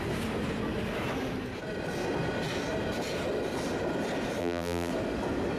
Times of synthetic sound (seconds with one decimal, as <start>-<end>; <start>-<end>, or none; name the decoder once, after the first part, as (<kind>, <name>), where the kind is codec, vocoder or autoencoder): 4.4-4.9 (vocoder, BigVGAN v2)